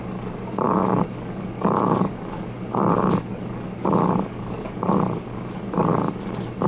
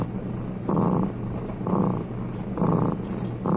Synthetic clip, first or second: first